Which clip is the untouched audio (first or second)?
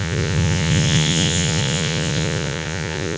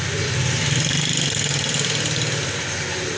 second